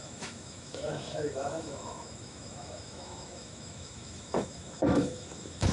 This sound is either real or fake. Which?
fake